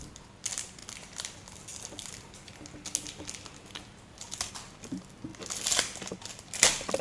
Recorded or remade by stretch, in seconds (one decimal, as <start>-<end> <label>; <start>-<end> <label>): 0.0-7.0 recorded